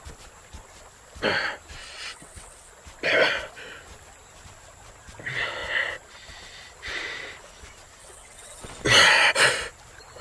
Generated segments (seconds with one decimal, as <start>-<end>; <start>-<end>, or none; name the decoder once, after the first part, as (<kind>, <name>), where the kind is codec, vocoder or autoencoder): 1.8-2.7 (vocoder, WaveNeXt); 8.0-8.8